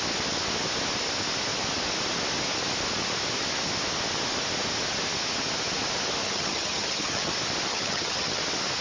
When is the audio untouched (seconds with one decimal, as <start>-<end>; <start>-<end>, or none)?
0.0-6.2; 7.3-7.7; 8.4-8.8

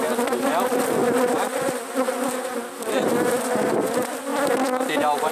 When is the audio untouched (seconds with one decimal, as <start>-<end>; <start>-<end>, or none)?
0.0-5.3

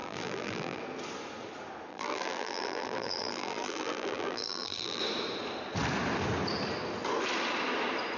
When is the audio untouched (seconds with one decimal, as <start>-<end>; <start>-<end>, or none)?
0.8-1.9; 5.0-8.2

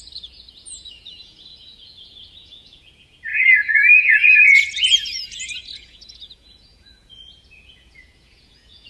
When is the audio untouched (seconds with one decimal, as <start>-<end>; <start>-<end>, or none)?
none

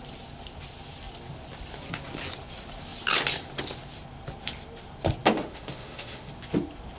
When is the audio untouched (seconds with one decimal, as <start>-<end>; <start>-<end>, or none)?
0.0-5.4; 6.3-7.0